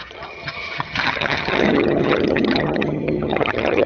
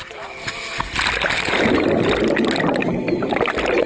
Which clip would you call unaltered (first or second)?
second